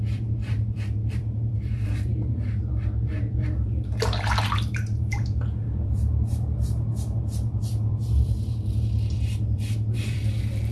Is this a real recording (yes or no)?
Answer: no